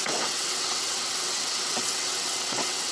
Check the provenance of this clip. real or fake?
fake